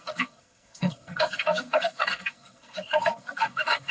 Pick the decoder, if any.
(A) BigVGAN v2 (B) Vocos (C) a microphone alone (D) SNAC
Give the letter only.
D